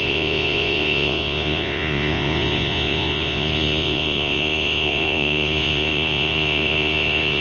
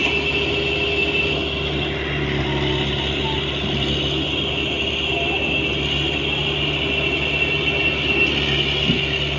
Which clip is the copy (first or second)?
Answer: first